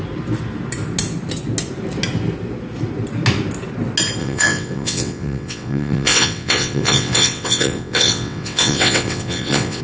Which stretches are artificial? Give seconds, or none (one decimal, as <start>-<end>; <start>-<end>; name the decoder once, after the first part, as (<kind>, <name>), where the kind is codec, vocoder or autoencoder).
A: 4.2-9.8 (vocoder, WaveNeXt)